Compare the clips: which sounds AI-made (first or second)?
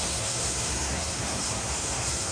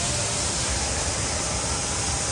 first